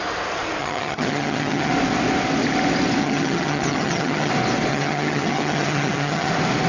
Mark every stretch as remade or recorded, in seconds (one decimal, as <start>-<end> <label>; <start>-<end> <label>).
0.0-0.6 recorded; 0.6-1.7 remade; 1.7-3.0 recorded; 3.0-4.3 remade; 4.3-4.7 recorded; 4.7-6.3 remade; 6.3-6.7 recorded